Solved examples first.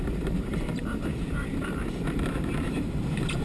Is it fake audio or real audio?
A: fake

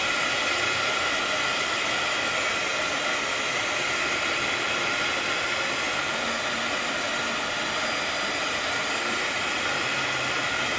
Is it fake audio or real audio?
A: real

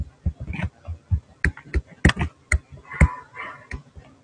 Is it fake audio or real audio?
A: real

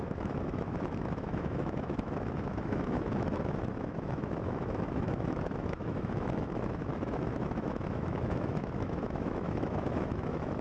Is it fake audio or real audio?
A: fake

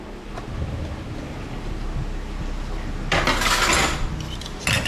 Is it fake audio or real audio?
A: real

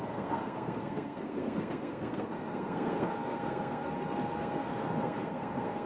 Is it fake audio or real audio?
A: fake